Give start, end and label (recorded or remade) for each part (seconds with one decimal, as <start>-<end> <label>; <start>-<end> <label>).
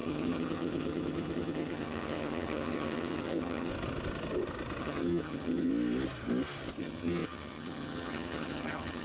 0.0-3.7 remade; 3.7-4.8 recorded; 4.8-5.7 remade; 5.7-6.8 recorded; 6.8-9.0 remade